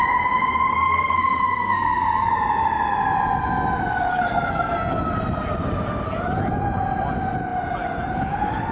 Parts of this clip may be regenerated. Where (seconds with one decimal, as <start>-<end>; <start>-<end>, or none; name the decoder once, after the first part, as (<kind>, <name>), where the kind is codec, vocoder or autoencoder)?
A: 0.7-2.3 (codec, SNAC); 4.1-4.9